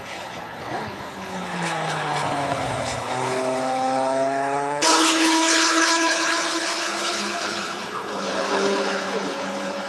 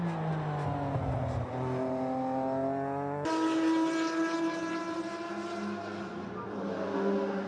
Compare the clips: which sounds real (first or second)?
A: second